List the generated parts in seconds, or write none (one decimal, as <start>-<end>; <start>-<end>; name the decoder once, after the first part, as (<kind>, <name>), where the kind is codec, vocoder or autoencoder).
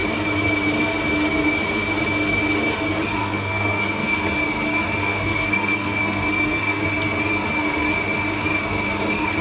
3.2-4.2 (codec, SNAC); 5.0-6.8